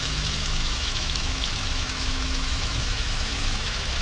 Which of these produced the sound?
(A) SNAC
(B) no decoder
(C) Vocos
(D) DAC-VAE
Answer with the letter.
D